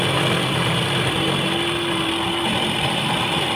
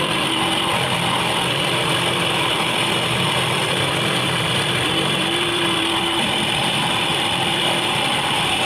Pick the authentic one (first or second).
first